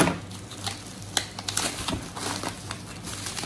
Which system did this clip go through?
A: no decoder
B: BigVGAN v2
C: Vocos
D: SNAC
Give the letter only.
A